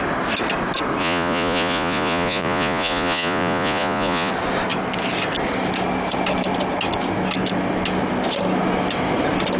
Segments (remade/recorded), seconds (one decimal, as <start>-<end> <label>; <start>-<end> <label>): 0.0-1.0 recorded; 1.0-4.3 remade; 4.3-9.6 recorded